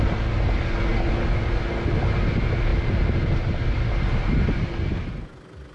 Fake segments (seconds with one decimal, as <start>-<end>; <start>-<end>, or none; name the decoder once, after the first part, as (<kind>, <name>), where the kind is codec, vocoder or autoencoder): none